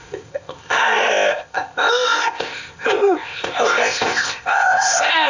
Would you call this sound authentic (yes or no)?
no